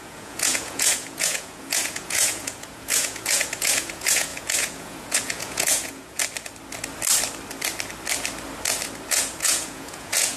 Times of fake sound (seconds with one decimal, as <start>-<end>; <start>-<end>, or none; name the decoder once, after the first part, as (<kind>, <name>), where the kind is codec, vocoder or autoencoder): 0.0-6.2 (vocoder, Vocos); 9.1-10.4